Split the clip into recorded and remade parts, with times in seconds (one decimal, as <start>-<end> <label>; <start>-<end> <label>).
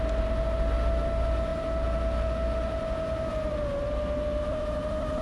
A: 0.0-5.2 recorded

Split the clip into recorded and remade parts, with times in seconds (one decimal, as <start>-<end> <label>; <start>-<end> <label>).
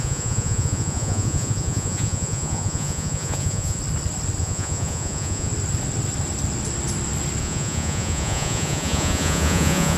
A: 0.0-3.8 remade; 3.8-4.4 recorded; 4.4-5.5 remade; 5.5-7.4 recorded; 7.4-10.0 remade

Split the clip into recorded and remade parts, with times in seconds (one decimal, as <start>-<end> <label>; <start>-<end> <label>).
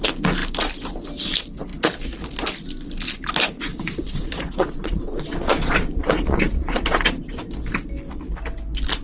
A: 0.0-3.7 recorded; 3.7-7.4 remade; 7.4-9.0 recorded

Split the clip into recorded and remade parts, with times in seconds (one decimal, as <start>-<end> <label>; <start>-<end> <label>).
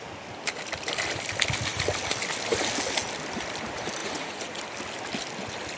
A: 0.0-4.0 recorded; 4.0-4.6 remade; 4.6-5.8 recorded